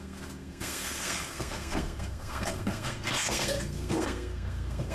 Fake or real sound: fake